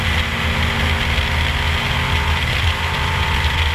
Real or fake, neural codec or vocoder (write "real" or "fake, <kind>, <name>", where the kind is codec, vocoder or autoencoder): real